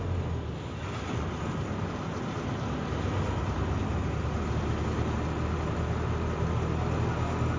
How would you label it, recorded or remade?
recorded